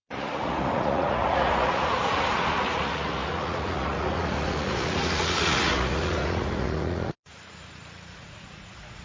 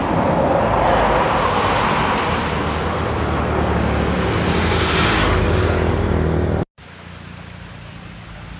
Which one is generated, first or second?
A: first